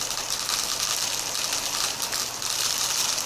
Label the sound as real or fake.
real